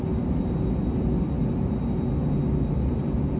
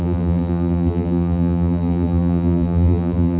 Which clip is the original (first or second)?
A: first